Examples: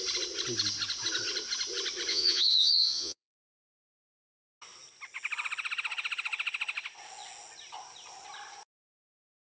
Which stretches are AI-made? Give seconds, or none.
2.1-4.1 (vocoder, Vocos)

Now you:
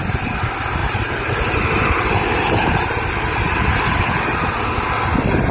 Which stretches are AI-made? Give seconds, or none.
0.8-4.1 (vocoder, BigVGAN v2)

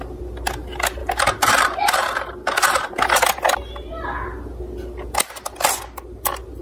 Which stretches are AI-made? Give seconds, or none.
1.0-1.8 (vocoder, BigVGAN v2)

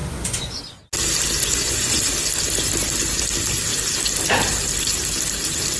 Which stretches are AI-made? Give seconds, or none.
0.0-0.6 (vocoder, Vocos); 1.4-2.0